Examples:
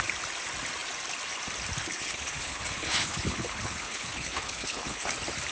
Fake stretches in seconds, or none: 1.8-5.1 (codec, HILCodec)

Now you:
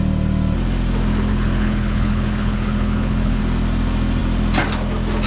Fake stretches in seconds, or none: 1.3-3.4 (codec, HILCodec)

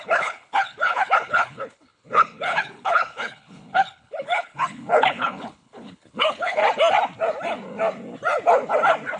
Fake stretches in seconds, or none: 0.0-6.6 (codec, HILCodec)

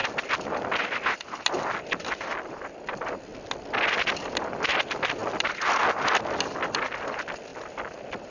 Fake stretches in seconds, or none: none